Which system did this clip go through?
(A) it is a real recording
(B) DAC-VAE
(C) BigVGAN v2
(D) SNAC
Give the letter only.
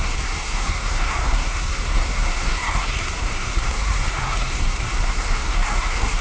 D